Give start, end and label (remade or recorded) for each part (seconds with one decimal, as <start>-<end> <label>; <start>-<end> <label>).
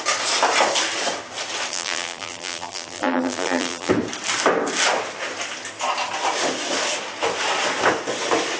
0.0-1.7 recorded; 1.7-3.9 remade; 3.9-8.6 recorded